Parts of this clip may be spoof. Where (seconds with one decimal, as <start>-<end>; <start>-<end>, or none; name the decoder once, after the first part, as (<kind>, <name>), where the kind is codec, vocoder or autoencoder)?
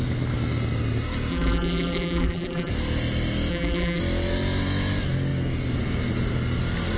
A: 1.3-2.7 (vocoder, BigVGAN v2); 3.5-4.0